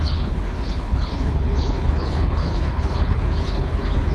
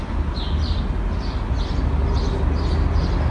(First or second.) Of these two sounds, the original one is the second